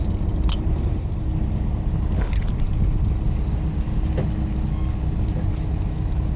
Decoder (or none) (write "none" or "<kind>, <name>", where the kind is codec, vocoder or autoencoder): none